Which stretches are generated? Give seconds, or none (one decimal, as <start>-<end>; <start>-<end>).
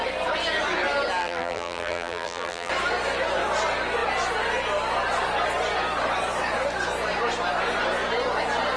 1.2-2.7